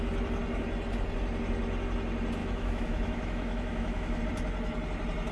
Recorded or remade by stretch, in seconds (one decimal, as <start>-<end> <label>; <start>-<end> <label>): 0.0-2.4 recorded; 2.4-4.2 remade; 4.2-5.3 recorded